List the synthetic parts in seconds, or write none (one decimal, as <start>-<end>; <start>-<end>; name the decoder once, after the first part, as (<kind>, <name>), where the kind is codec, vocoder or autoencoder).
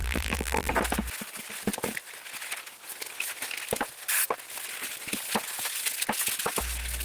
0.0-0.7 (vocoder, BigVGAN v2)